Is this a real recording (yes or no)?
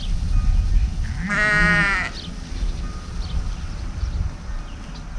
yes